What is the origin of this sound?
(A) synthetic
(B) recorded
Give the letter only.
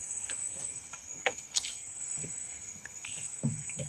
A